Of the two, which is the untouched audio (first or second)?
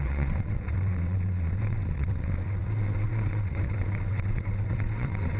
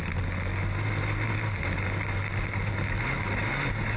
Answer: second